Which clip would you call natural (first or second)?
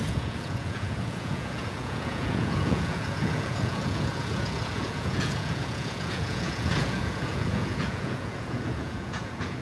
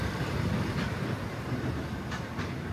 second